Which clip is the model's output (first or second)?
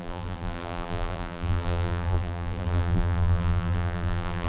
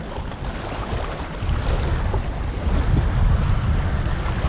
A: first